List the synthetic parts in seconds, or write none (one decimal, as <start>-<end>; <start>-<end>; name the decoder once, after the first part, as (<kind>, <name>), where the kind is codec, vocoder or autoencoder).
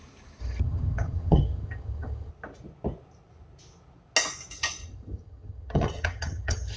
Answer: 0.4-2.3 (vocoder, HiFi-GAN); 4.8-6.8